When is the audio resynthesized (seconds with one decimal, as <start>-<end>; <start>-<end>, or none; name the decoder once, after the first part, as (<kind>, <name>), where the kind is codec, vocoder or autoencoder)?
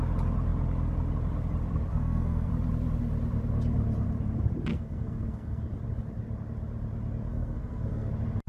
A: 1.9-2.5 (codec, SNAC); 4.7-5.6; 7.3-8.1